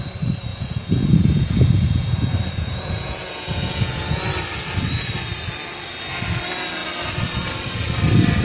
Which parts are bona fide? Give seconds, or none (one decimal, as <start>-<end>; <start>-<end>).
0.0-0.5; 4.2-8.4